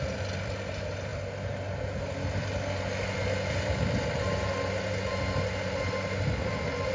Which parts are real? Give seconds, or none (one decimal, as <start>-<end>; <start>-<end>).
0.0-6.9